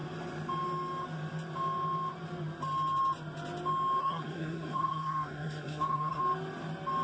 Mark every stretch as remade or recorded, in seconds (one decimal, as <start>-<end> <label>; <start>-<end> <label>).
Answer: 0.0-4.0 recorded; 4.0-6.2 remade; 6.2-7.0 recorded

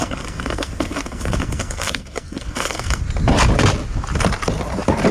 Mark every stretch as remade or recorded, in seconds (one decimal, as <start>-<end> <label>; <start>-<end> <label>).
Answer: 0.0-3.0 remade; 3.0-5.1 recorded

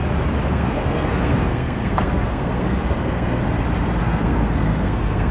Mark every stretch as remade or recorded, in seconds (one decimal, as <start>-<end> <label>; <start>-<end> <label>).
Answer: 0.0-0.5 recorded; 0.5-3.4 remade; 3.4-4.0 recorded; 4.0-5.3 remade